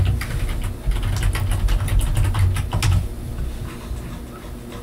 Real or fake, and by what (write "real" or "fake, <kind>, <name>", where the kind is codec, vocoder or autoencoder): real